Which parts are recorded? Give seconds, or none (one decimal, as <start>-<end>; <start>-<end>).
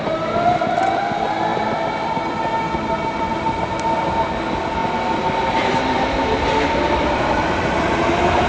0.0-1.5; 2.2-8.5